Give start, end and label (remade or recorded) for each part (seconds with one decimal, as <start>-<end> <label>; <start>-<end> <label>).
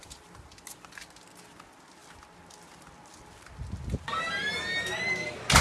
0.0-5.6 recorded